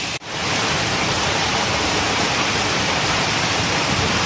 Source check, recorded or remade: remade